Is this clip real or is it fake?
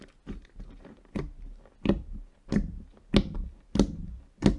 real